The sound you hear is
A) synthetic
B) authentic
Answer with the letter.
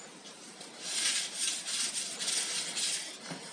B